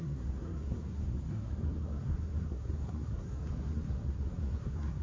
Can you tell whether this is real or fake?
fake